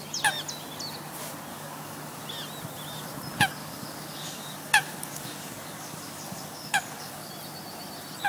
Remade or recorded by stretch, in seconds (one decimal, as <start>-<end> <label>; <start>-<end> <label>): 0.0-1.5 recorded; 1.5-2.2 remade; 2.2-3.6 recorded; 3.6-7.3 remade; 7.3-8.3 recorded